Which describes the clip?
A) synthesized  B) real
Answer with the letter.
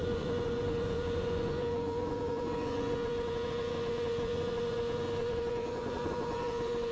A